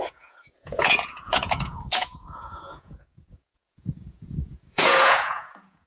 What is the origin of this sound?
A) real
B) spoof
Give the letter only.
B